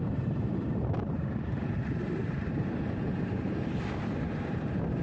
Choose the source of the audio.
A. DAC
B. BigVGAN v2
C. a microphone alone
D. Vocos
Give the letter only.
B